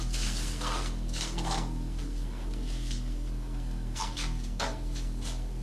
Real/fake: fake